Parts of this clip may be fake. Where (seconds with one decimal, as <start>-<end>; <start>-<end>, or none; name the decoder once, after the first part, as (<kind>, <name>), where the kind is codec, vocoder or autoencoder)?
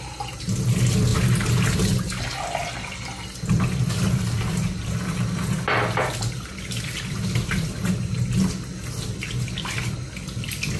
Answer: none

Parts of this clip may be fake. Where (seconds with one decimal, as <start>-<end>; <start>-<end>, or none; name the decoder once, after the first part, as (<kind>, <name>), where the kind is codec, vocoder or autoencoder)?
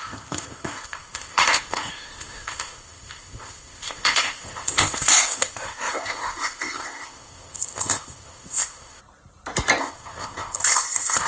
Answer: 0.0-9.0 (codec, ZipCodec); 9.8-11.3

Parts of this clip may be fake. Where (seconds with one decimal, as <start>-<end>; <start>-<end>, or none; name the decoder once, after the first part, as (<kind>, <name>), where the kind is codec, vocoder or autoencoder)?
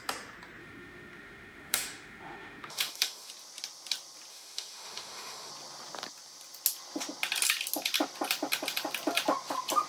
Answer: 0.6-3.3 (autoencoder, DAC-VAE); 4.3-5.5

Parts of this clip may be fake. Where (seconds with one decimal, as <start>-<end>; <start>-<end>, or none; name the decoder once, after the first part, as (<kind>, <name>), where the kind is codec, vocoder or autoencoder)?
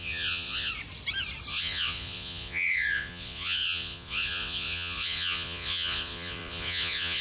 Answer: 0.0-0.7 (vocoder, Vocos); 1.5-7.2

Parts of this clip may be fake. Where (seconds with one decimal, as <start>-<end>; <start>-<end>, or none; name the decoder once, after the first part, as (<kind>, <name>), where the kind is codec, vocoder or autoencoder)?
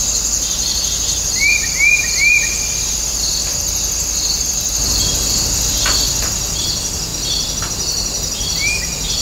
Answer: 0.0-3.5 (vocoder, BigVGAN v2); 4.4-7.1; 7.6-9.2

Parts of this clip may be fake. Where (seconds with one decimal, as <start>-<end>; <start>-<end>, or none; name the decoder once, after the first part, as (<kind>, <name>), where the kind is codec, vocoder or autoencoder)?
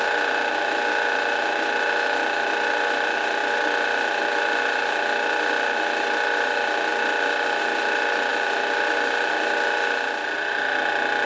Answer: none